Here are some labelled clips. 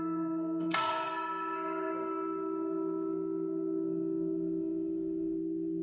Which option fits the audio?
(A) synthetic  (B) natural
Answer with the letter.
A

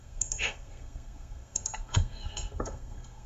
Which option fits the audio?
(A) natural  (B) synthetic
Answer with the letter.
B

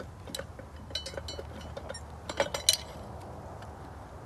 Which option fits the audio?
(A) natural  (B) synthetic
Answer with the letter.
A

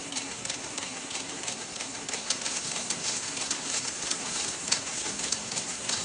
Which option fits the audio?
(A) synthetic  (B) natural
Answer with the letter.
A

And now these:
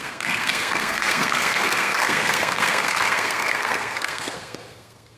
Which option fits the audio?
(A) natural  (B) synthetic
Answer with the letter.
B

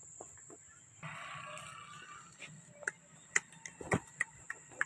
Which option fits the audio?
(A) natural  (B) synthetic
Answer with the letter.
A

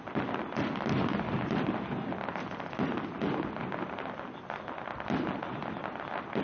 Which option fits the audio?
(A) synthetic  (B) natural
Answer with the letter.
B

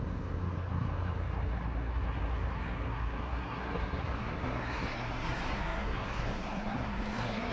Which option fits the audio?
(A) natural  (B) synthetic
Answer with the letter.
B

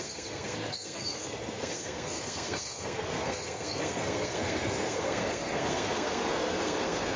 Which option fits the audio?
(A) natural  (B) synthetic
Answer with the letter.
B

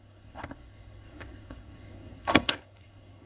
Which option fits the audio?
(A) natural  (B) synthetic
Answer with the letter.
B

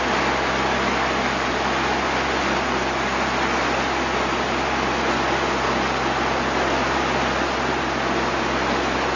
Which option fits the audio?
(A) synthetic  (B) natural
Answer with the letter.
B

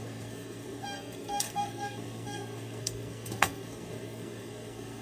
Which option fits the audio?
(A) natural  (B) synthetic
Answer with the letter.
B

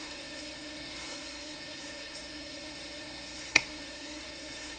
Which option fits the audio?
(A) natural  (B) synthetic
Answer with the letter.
B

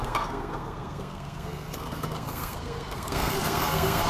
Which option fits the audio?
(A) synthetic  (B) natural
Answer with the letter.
A